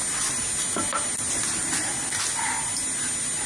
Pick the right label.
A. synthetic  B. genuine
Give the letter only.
B